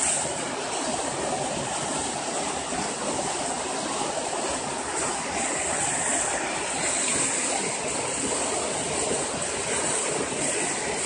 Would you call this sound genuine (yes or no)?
yes